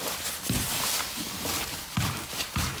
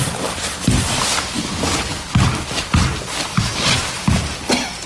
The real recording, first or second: second